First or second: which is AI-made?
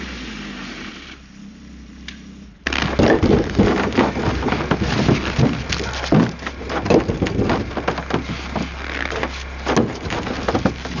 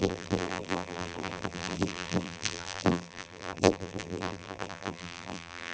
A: second